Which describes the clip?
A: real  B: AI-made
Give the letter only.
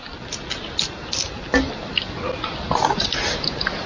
A